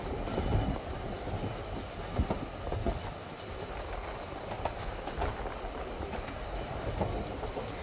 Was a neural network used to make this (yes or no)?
no